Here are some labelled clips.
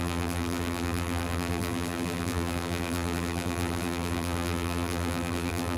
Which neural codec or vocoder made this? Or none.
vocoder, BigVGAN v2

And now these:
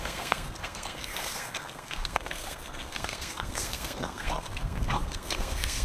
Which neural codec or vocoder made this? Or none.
codec, SNAC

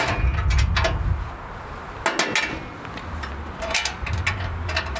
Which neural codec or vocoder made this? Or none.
none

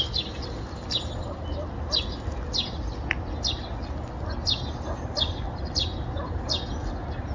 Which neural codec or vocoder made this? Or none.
none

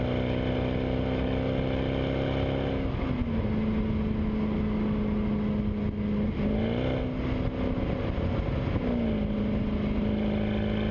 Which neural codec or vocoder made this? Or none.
none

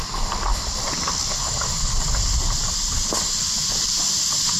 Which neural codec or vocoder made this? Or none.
none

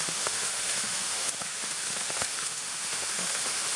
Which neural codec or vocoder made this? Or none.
autoencoder, DAC-VAE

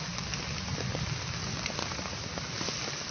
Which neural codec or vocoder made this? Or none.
none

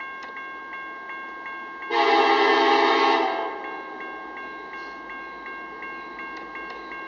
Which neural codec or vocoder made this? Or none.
none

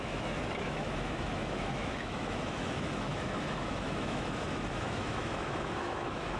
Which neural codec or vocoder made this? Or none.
autoencoder, DAC-VAE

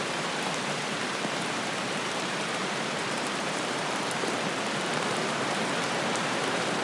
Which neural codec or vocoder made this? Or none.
vocoder, BigVGAN v2